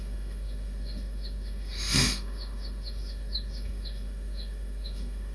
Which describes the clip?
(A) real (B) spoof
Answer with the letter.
B